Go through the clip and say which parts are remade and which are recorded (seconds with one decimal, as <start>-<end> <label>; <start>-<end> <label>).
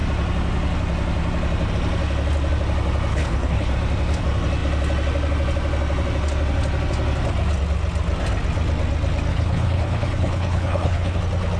0.0-3.1 recorded; 3.1-3.7 remade; 3.7-9.3 recorded; 9.3-11.2 remade; 11.2-11.6 recorded